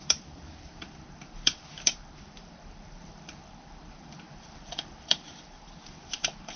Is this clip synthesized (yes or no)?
yes